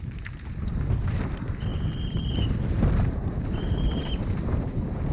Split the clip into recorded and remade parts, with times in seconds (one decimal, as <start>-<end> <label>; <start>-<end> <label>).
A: 0.0-1.7 recorded; 1.7-4.1 remade; 4.1-5.1 recorded